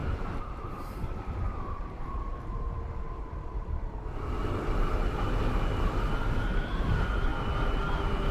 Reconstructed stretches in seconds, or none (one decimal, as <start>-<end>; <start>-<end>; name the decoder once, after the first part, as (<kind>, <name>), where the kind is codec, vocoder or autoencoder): 0.0-2.4 (vocoder, BigVGAN v2)